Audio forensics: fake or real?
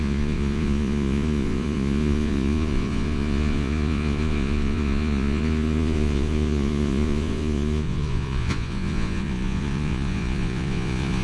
fake